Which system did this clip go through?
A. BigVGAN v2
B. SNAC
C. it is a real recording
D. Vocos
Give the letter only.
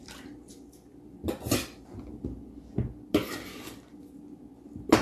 C